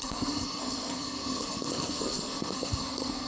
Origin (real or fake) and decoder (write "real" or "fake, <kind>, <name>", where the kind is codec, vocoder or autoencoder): fake, codec, SNAC